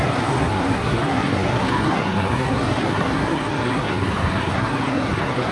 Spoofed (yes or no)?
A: yes